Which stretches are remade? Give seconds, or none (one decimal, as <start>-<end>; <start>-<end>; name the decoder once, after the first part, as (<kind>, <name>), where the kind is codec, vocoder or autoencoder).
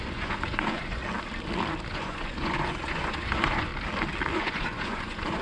0.0-1.0 (vocoder, Vocos); 1.9-3.7; 4.4-5.4